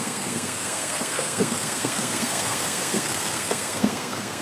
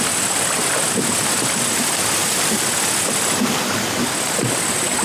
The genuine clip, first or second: second